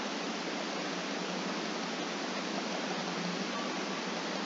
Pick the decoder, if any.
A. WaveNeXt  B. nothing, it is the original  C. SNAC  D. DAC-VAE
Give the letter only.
B